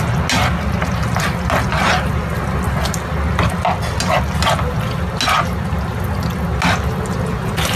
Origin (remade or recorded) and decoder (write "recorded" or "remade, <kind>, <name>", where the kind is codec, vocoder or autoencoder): recorded